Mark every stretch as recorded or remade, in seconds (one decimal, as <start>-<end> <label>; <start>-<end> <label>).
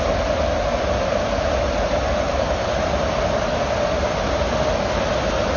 0.0-0.7 recorded; 0.7-3.4 remade; 3.4-5.6 recorded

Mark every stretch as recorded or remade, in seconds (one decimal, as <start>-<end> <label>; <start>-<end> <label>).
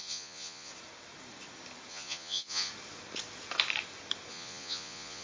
0.0-0.7 remade; 0.7-1.9 recorded; 1.9-2.7 remade; 2.7-4.3 recorded; 4.3-5.2 remade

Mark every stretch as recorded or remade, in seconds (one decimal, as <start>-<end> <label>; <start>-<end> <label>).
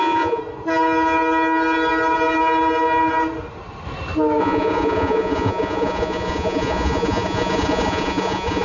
0.0-0.4 remade; 0.4-4.4 recorded; 4.4-8.6 remade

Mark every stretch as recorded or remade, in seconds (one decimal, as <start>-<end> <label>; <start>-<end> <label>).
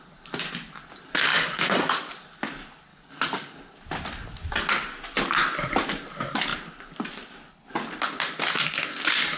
0.0-1.3 recorded; 1.3-2.1 remade; 2.1-2.9 recorded; 2.9-3.7 remade; 3.7-9.4 recorded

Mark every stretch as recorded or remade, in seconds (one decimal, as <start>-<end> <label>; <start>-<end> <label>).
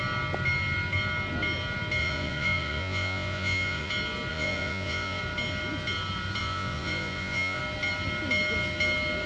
0.0-2.0 recorded; 2.0-3.9 remade; 3.9-4.3 recorded; 4.3-5.2 remade; 5.2-6.4 recorded; 6.4-7.6 remade; 7.6-9.3 recorded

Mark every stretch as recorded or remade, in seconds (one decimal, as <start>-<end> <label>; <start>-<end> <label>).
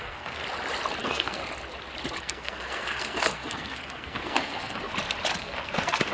0.0-0.4 remade; 0.4-1.0 recorded; 1.0-1.4 remade; 1.4-2.2 recorded; 2.2-4.9 remade; 4.9-5.4 recorded; 5.4-6.1 remade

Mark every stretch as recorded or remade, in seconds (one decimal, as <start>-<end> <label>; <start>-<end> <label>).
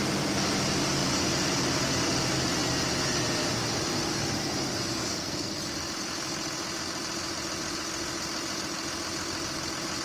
0.0-5.0 recorded; 5.0-5.5 remade; 5.5-10.0 recorded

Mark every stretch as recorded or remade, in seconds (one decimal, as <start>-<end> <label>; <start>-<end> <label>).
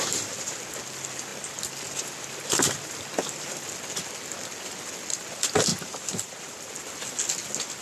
0.0-5.7 recorded; 5.7-6.7 remade; 6.7-7.8 recorded